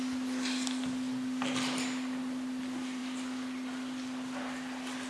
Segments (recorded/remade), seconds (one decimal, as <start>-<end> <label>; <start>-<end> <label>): 0.0-5.1 recorded